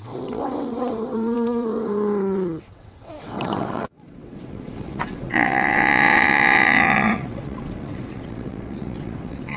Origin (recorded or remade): remade